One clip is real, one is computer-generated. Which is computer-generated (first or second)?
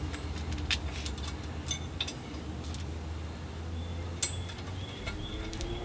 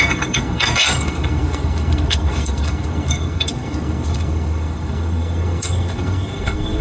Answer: second